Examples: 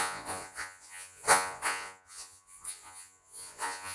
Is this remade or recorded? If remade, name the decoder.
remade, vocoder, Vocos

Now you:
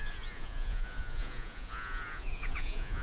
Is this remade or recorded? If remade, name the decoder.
remade, vocoder, Vocos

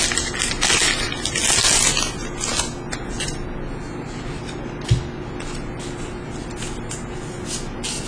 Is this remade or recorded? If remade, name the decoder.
recorded